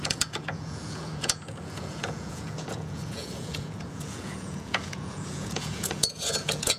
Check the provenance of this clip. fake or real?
fake